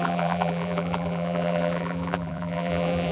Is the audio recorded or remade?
remade